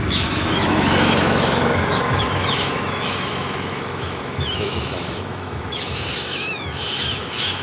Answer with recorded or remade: remade